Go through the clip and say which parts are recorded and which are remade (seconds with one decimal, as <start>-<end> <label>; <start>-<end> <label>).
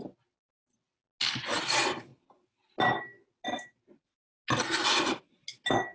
0.0-5.9 recorded